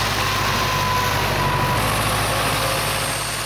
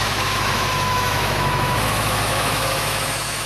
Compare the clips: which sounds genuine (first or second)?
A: first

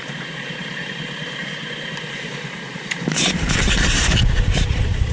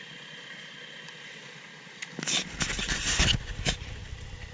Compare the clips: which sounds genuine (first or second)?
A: second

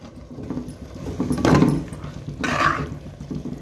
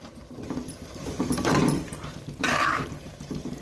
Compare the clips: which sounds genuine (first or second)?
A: first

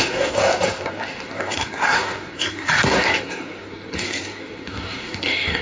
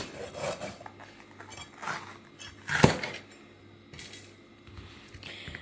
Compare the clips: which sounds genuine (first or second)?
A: second